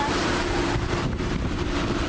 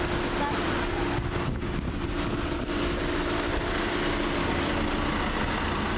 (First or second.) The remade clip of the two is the first